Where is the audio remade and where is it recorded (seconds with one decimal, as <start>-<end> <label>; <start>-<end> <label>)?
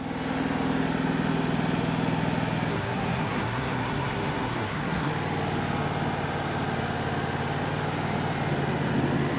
0.0-2.7 recorded; 2.7-5.1 remade; 5.1-9.4 recorded